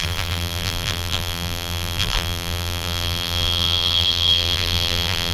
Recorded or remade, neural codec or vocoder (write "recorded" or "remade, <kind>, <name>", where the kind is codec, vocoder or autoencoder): remade, vocoder, BigVGAN v2